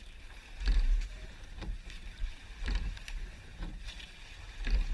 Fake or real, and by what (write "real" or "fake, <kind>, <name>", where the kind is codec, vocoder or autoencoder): fake, vocoder, BigVGAN v2